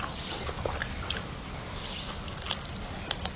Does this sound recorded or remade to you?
recorded